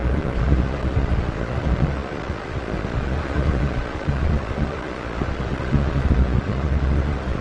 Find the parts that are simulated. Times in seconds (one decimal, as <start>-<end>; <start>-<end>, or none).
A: 0.0-7.4